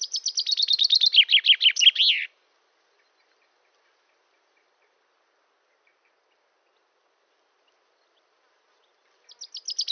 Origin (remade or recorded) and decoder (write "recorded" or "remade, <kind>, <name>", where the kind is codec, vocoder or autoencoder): recorded